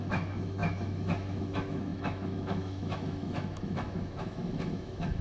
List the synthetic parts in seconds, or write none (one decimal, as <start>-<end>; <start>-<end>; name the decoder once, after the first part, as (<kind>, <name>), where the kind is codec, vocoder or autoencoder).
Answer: 0.0-5.2 (autoencoder, DAC-VAE)